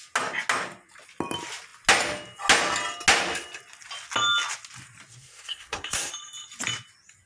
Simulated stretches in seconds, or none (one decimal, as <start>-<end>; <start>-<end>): 5.1-6.1